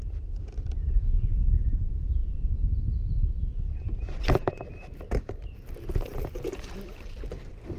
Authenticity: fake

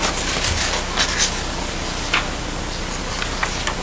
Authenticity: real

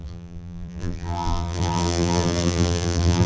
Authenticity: fake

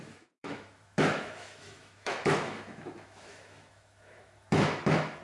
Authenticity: fake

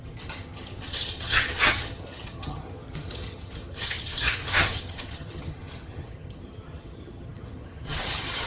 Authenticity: fake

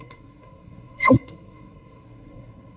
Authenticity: fake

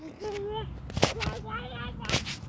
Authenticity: real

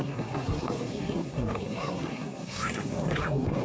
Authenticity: fake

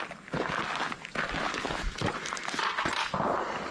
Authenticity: real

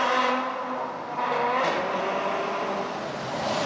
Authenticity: real